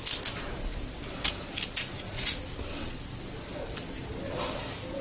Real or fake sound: real